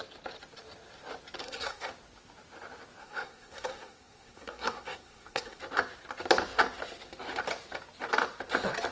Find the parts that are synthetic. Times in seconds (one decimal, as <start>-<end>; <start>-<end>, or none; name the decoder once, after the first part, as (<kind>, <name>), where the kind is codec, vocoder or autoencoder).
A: 1.4-1.9 (codec, SNAC); 3.0-5.6